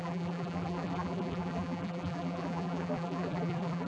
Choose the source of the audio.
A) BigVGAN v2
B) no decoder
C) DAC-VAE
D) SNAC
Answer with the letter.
A